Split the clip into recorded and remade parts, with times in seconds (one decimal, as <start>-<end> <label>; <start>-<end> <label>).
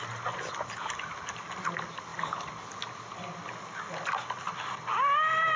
0.0-2.1 remade; 2.1-4.8 recorded; 4.8-5.6 remade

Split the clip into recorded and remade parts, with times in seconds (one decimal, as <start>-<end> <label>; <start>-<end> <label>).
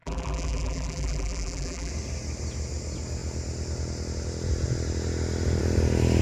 0.0-1.9 remade; 1.9-6.2 recorded